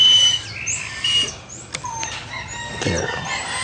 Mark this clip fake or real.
real